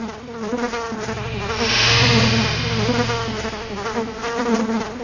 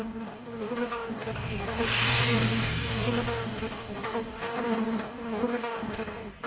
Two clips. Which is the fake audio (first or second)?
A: second